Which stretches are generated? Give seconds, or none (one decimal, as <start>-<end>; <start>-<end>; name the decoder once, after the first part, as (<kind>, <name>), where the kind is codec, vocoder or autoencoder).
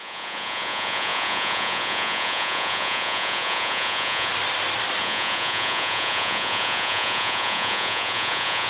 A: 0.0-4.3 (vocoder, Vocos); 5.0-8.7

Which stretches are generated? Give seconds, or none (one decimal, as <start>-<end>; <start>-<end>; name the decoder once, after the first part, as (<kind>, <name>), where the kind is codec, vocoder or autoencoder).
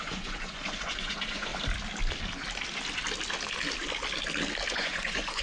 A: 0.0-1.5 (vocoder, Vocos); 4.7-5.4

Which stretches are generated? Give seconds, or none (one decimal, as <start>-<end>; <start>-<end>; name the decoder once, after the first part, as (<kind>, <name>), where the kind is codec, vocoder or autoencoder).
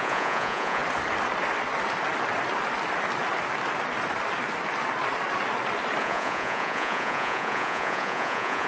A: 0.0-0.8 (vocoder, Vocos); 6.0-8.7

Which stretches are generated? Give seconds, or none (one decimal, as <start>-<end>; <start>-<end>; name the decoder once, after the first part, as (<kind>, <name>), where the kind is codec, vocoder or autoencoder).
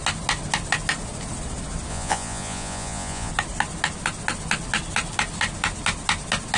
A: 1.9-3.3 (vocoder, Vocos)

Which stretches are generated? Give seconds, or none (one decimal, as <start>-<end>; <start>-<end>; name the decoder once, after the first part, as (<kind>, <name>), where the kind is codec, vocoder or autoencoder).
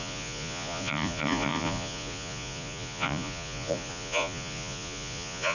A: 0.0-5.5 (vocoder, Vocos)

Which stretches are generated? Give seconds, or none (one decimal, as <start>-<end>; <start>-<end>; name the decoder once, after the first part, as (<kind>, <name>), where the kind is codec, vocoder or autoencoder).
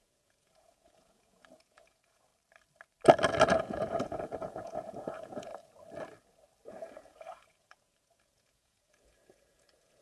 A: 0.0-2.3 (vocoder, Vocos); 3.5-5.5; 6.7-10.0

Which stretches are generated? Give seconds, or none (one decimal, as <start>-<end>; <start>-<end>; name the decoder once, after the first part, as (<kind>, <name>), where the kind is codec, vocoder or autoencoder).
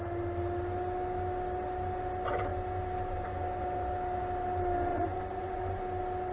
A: 4.9-5.8 (vocoder, Vocos)